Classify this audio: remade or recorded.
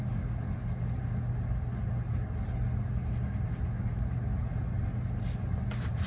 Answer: recorded